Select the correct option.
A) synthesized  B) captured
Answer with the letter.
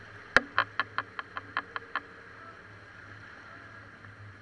B